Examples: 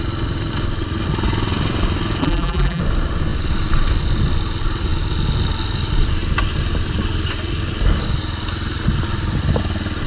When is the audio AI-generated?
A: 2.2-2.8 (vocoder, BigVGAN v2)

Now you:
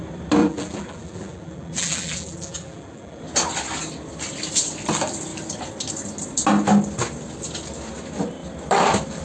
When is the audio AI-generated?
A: 0.4-3.2 (vocoder, BigVGAN v2)